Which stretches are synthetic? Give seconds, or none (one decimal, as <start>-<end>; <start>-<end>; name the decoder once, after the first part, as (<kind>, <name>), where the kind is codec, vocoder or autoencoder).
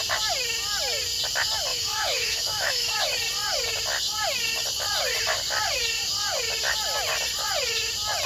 1.7-2.9 (autoencoder, DAC-VAE)